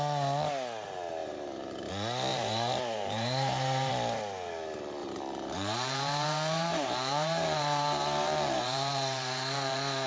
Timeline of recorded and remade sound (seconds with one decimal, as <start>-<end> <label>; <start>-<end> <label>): 0.0-1.2 recorded; 1.2-1.9 remade; 1.9-2.3 recorded; 2.3-3.9 remade; 3.9-5.0 recorded; 5.0-10.1 remade